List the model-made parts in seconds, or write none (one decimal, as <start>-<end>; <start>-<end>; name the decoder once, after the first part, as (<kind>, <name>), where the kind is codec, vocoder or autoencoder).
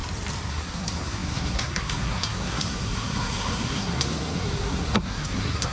0.5-5.7 (codec, SNAC)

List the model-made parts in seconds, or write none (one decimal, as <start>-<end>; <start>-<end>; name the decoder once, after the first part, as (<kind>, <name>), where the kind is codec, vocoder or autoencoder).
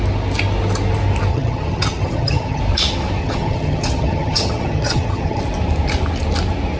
1.3-2.6 (vocoder, HiFi-GAN); 3.2-5.4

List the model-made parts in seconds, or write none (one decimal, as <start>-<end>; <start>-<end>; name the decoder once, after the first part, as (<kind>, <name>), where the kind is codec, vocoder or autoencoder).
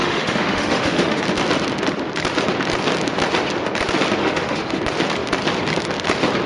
0.0-1.2 (autoencoder, DAC-VAE); 4.2-4.8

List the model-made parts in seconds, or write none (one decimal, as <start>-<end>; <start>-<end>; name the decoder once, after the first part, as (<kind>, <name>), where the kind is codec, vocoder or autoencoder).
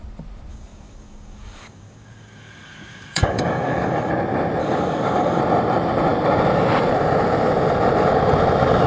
0.5-4.1 (codec, DAC); 4.6-5.4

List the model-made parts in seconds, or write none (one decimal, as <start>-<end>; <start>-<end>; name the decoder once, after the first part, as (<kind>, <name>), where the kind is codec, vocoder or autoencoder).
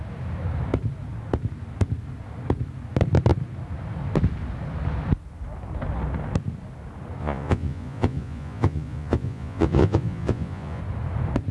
7.2-10.8 (vocoder, Vocos)